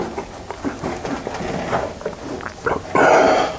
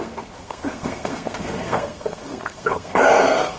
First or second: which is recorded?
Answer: first